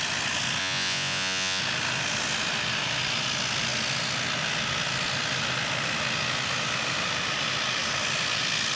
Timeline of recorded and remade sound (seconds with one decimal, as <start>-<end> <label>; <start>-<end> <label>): 0.0-0.6 recorded; 0.6-1.6 remade; 1.6-8.8 recorded